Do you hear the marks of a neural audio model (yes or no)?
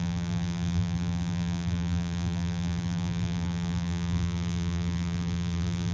yes